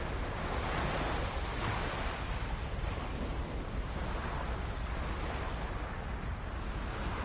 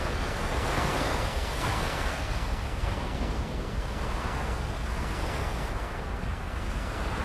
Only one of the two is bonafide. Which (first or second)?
first